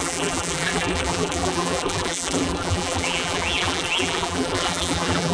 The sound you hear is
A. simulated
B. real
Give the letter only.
A